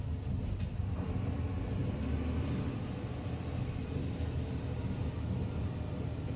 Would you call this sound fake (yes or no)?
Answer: no